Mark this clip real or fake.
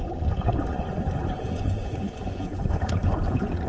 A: fake